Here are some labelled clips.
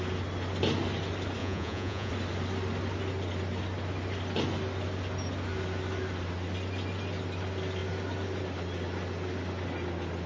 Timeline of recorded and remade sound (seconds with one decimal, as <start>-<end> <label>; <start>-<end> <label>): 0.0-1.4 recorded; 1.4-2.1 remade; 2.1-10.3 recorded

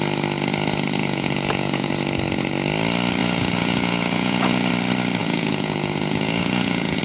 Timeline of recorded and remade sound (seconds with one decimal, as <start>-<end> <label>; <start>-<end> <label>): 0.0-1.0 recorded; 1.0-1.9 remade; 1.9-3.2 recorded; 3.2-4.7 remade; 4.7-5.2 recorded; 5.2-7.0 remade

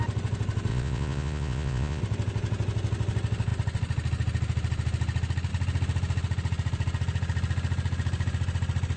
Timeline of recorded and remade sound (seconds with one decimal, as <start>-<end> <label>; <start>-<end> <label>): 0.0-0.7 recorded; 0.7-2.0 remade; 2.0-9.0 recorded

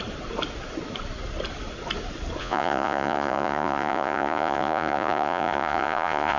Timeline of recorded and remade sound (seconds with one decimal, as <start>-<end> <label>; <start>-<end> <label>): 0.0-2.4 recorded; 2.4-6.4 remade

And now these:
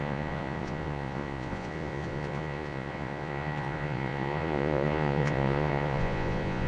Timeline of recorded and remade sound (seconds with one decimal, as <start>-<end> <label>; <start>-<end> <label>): 0.0-6.7 remade

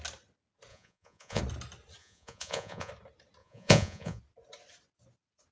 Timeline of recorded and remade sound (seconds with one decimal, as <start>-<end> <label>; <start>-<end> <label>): 0.0-0.7 recorded; 0.7-1.4 remade; 1.4-2.0 recorded; 2.0-2.9 remade; 2.9-3.4 recorded; 3.4-4.2 remade; 4.2-5.5 recorded

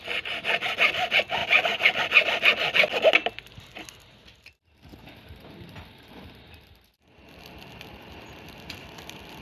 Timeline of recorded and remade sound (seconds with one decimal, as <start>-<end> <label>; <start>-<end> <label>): 0.0-9.4 recorded